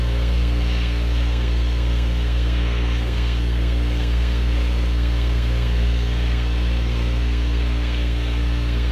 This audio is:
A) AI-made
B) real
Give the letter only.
A